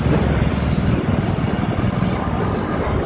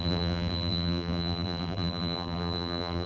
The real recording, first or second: first